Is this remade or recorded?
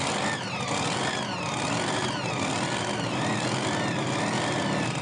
recorded